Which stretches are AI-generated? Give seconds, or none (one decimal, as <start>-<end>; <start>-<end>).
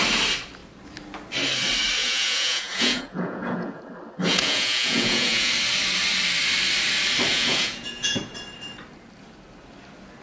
2.0-3.8; 4.3-5.5; 7.3-8.2